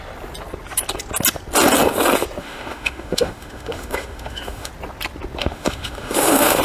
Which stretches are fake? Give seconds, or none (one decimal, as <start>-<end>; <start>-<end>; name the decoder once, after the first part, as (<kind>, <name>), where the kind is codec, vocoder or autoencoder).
2.4-4.7 (autoencoder, DAC-VAE); 5.4-6.6